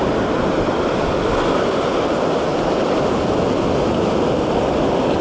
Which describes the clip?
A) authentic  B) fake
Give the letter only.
A